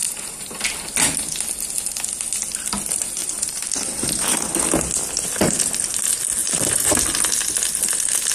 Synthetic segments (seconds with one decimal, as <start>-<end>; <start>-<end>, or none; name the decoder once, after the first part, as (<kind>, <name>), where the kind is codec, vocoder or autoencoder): 0.0-0.6 (vocoder, BigVGAN v2); 3.2-4.6; 6.4-7.0